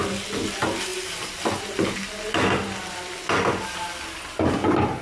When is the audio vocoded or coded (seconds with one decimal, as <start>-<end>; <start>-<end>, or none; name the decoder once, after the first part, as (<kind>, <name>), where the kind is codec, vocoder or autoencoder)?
none